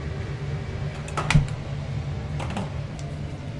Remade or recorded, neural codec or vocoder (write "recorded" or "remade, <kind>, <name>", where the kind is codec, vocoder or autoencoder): recorded